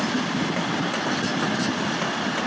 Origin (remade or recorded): recorded